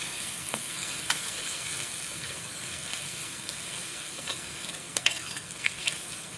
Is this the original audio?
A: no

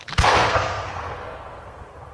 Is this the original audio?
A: no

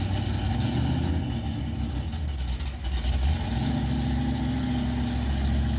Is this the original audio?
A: yes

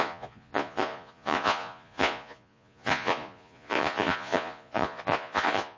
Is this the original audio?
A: no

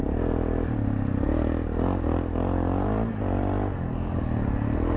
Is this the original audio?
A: yes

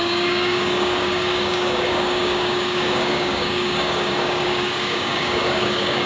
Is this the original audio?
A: no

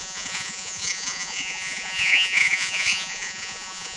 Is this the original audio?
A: no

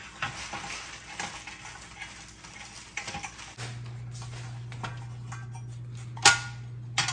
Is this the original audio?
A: yes